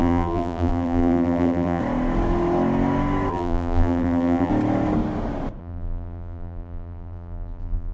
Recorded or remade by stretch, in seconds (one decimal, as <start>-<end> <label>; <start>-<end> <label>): 0.0-1.8 remade; 1.8-3.3 recorded; 3.3-4.5 remade; 4.5-5.6 recorded; 5.6-7.9 remade